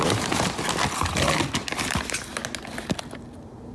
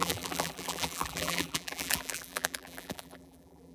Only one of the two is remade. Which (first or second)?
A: second